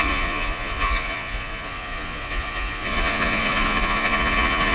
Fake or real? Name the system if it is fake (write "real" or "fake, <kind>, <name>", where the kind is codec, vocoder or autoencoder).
fake, vocoder, Vocos